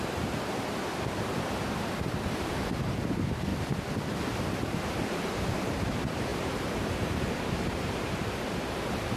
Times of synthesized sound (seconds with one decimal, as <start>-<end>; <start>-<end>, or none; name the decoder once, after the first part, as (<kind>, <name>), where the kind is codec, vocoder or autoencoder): 0.0-3.5 (vocoder, BigVGAN v2); 4.4-9.2